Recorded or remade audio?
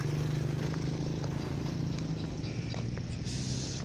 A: recorded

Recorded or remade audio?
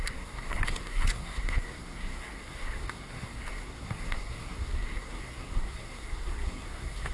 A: remade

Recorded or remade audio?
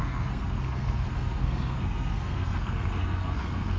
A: remade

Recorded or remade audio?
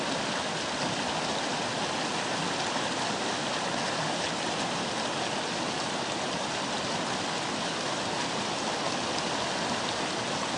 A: recorded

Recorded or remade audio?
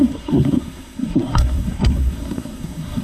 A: remade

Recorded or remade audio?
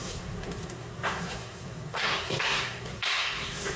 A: remade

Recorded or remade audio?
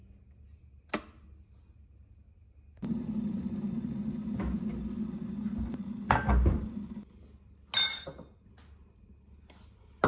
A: recorded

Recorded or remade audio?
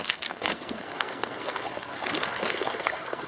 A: remade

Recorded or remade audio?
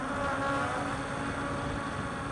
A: recorded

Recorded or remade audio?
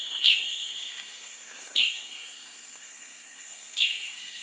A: remade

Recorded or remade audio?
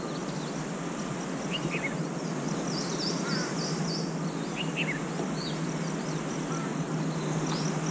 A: recorded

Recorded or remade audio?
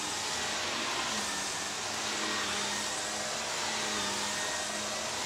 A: recorded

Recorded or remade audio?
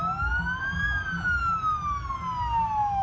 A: recorded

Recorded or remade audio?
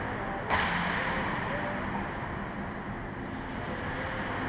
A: recorded